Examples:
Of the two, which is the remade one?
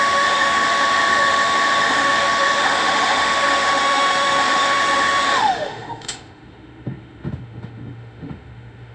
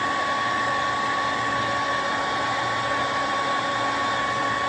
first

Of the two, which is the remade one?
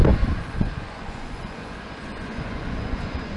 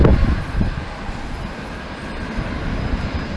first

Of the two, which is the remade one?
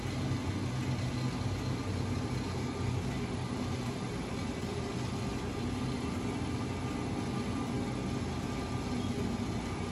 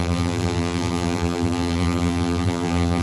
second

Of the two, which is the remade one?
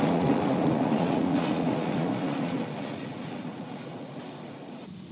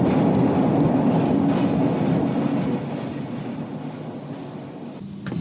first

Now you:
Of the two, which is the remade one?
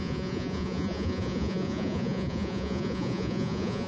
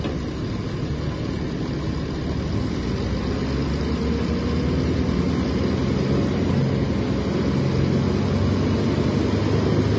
first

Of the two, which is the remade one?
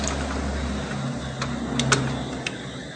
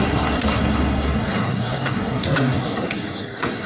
second